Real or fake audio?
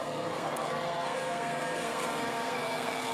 fake